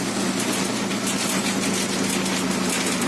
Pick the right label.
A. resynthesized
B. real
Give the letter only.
B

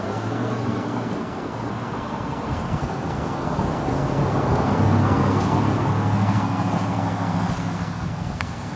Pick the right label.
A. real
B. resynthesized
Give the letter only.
B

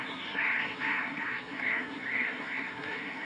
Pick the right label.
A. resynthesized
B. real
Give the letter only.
A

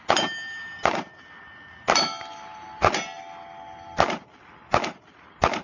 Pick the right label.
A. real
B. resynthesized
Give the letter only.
A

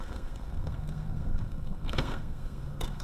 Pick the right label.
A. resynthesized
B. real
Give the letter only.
A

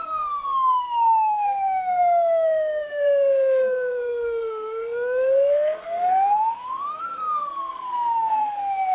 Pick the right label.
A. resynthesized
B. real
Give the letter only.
A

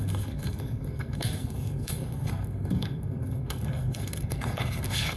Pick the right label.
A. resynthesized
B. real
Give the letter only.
A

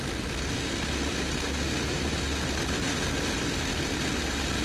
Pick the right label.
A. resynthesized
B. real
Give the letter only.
B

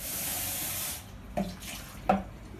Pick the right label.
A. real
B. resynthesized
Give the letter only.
A